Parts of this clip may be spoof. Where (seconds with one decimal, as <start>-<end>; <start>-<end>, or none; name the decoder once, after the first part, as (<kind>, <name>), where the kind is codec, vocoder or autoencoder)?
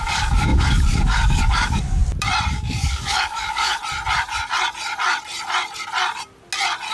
0.0-2.0 (codec, DAC); 2.5-3.8